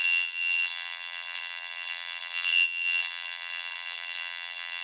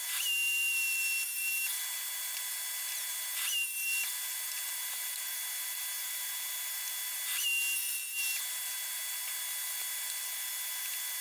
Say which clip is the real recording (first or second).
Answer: second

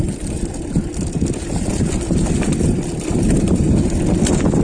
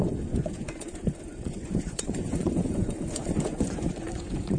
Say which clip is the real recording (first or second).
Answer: first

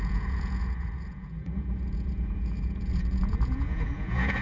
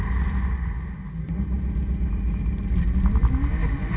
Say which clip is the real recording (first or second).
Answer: second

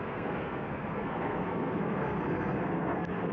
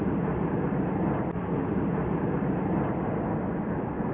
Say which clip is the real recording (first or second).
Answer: second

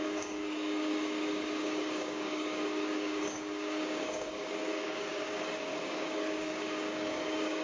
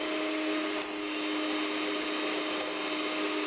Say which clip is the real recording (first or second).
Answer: second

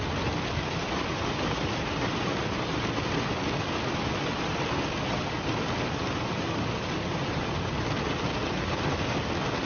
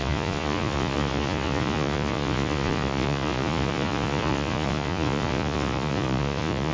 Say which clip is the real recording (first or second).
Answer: first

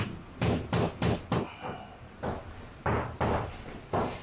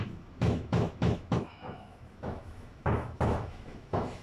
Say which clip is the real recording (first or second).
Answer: first